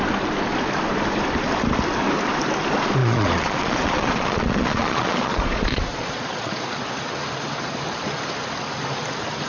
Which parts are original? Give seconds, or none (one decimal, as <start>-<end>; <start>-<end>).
0.0-3.0; 6.6-9.5